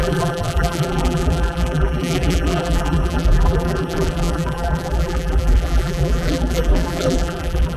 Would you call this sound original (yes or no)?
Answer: no